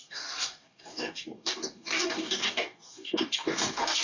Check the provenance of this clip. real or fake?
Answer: fake